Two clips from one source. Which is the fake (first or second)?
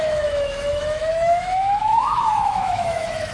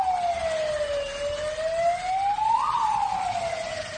first